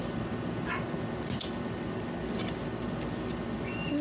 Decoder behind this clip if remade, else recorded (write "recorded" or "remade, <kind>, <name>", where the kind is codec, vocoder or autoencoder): recorded